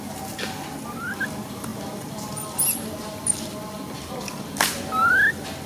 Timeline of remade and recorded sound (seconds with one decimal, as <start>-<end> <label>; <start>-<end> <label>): 0.0-5.7 recorded